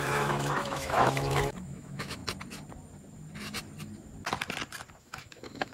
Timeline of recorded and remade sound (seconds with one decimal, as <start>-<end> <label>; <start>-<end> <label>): 0.0-2.2 remade; 2.2-5.0 recorded; 5.0-5.7 remade

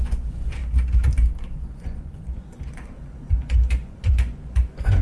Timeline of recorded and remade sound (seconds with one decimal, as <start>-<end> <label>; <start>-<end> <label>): 0.0-0.6 remade; 0.6-1.4 recorded; 1.4-5.0 remade

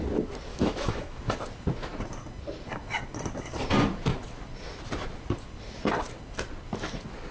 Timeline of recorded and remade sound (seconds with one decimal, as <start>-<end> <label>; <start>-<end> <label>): 0.0-0.5 recorded; 0.5-1.2 remade; 1.2-7.3 recorded

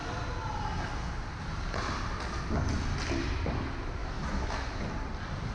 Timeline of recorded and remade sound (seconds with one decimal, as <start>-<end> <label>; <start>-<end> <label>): 0.0-4.0 recorded; 4.0-4.8 remade; 4.8-5.5 recorded

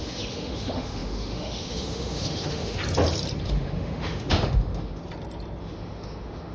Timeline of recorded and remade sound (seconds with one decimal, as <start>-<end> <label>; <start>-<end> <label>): 0.0-2.8 remade; 2.8-3.4 recorded; 3.4-5.0 remade; 5.0-5.6 recorded; 5.6-6.5 remade

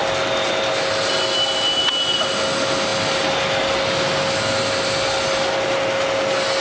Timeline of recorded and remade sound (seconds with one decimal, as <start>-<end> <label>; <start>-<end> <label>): 0.0-6.6 recorded

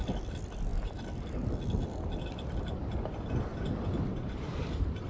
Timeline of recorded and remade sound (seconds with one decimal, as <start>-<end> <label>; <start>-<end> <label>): 0.0-5.1 recorded

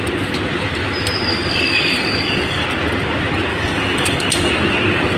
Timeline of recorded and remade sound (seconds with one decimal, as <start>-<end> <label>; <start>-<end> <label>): 0.0-1.3 recorded; 1.3-2.6 remade; 2.6-3.5 recorded; 3.5-4.5 remade; 4.5-5.2 recorded